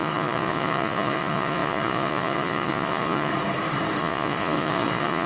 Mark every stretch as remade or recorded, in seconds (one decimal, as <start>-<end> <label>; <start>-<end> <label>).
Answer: 0.0-3.3 remade; 3.3-4.0 recorded; 4.0-5.3 remade